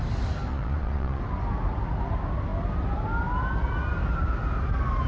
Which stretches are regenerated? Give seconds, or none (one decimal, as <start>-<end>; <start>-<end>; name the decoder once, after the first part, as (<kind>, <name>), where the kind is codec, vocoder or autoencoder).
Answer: 0.5-1.2 (vocoder, Vocos)